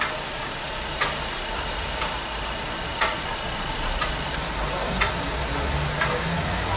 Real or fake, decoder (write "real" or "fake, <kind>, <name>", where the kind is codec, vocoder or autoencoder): real